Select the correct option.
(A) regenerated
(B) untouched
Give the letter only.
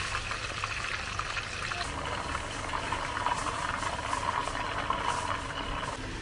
B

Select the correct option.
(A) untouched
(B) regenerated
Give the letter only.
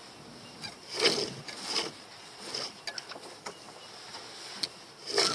A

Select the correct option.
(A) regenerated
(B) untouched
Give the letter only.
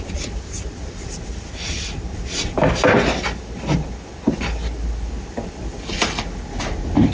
B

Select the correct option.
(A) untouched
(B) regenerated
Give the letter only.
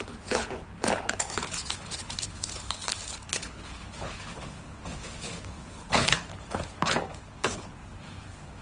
B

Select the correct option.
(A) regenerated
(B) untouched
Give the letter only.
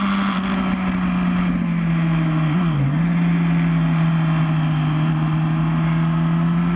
B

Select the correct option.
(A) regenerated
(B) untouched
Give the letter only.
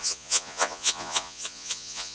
A